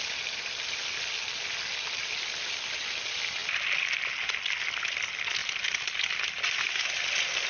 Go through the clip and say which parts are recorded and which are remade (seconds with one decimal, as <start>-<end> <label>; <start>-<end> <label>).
0.0-7.5 recorded